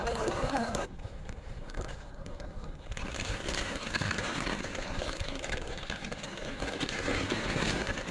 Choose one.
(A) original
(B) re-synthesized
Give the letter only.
B